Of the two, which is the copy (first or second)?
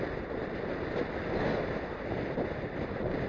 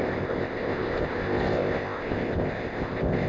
second